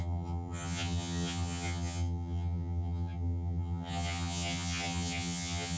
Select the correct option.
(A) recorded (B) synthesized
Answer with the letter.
B